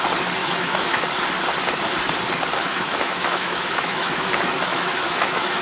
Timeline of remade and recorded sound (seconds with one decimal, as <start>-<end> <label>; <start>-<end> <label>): 0.0-0.4 recorded; 0.4-1.0 remade; 1.0-2.6 recorded; 2.6-4.1 remade; 4.1-4.7 recorded; 4.7-5.6 remade